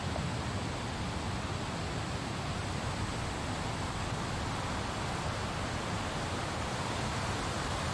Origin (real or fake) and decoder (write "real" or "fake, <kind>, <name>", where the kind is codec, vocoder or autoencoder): real